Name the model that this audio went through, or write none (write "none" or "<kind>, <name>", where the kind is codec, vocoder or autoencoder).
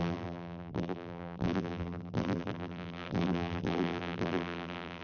vocoder, BigVGAN v2